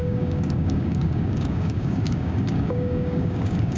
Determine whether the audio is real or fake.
fake